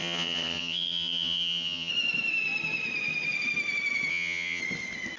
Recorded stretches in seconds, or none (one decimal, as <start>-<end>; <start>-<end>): 1.9-4.1; 4.6-5.2